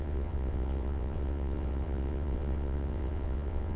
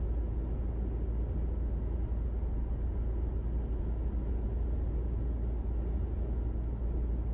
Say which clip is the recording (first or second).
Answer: second